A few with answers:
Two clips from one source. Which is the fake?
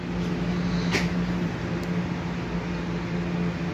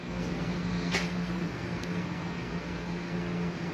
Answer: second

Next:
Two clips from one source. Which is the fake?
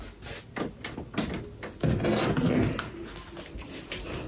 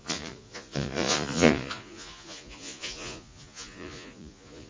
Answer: second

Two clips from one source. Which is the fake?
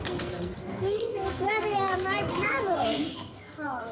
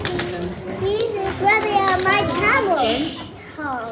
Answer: first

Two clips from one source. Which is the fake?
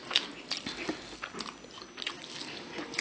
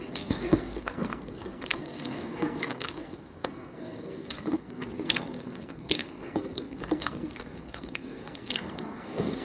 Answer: second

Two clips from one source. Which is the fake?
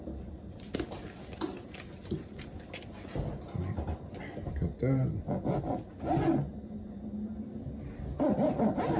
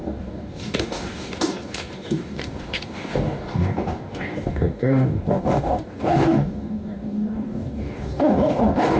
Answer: second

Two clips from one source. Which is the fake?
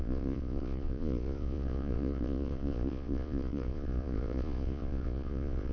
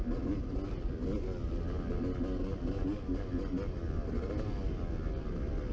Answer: first